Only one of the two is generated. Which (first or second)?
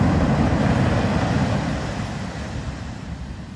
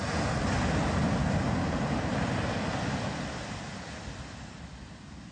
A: first